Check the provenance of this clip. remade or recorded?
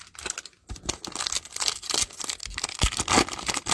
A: recorded